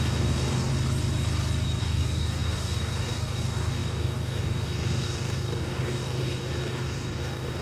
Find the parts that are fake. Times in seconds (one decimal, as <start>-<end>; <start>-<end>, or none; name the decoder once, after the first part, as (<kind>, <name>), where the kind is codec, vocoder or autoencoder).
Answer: 0.0-0.7 (codec, DAC); 1.8-7.6